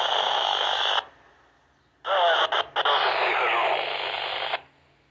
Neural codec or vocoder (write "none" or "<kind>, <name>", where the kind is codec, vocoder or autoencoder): none